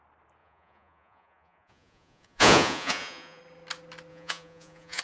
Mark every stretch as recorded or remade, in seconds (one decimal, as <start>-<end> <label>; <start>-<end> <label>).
0.0-0.4 recorded; 0.4-3.4 remade; 3.4-4.1 recorded; 4.1-5.0 remade